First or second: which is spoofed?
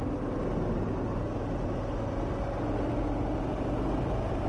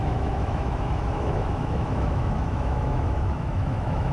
second